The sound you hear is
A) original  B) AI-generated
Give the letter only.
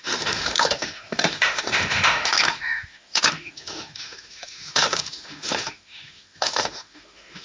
B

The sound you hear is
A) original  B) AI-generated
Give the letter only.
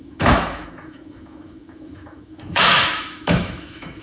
B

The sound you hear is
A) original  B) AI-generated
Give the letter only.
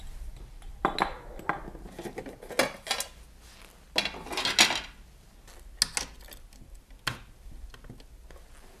A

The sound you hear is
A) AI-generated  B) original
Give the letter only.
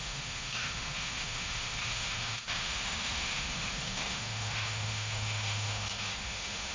A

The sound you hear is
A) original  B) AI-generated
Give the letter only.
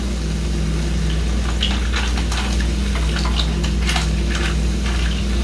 A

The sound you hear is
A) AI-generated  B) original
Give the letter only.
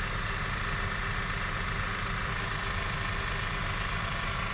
B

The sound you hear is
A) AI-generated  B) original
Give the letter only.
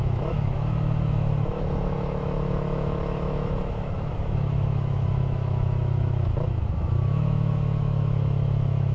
A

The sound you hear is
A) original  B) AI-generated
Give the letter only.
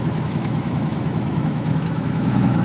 B